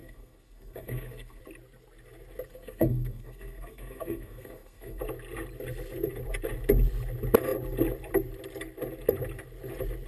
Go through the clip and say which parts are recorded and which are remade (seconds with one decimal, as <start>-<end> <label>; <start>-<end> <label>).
0.0-1.4 remade; 1.4-2.5 recorded; 2.5-5.0 remade; 5.0-10.1 recorded